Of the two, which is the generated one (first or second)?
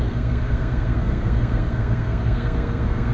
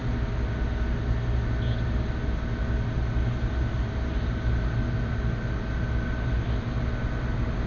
first